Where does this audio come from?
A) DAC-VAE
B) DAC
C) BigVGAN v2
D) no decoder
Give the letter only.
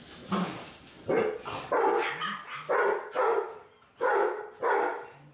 D